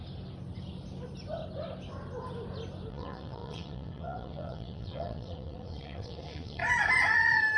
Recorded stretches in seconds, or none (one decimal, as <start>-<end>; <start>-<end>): 0.0-2.9; 6.6-7.6

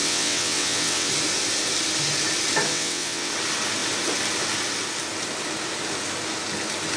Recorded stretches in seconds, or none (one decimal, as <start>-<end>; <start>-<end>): 1.1-2.7; 3.3-7.0

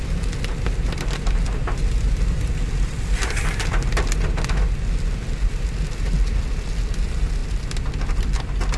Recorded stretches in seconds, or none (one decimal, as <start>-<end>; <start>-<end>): 0.0-8.8

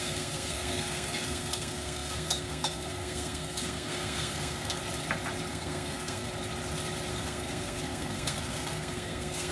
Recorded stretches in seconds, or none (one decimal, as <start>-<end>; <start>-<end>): 4.8-5.5; 6.3-7.1

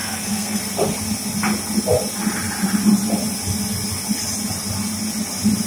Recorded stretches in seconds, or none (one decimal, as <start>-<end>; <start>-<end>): 0.6-5.7

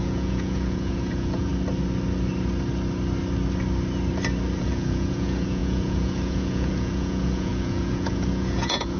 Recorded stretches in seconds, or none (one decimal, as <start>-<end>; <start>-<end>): 1.5-4.6